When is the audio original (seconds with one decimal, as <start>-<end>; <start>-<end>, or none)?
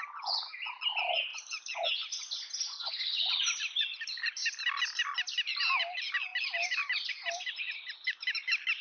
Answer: 0.0-8.8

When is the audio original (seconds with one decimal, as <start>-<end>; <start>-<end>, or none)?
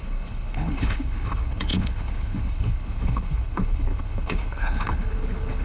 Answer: none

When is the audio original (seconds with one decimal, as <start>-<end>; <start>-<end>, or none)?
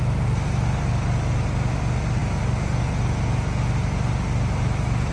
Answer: 0.0-5.1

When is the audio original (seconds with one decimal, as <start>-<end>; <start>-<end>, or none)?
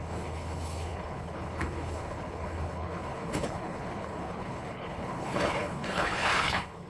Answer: none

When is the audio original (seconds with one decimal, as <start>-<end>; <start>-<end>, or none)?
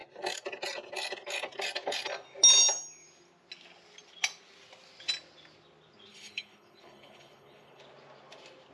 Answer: 0.0-6.1; 7.8-8.7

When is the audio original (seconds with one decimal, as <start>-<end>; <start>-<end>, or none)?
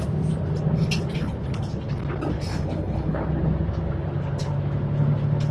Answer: 0.0-2.5; 3.3-5.5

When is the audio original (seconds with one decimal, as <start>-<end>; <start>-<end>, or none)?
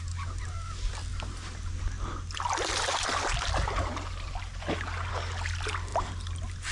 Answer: 0.0-6.7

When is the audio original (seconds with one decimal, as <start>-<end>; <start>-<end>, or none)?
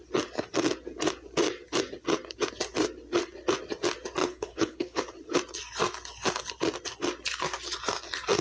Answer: 0.0-4.2; 5.0-8.4